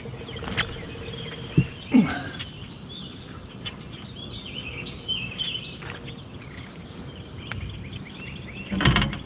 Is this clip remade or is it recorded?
recorded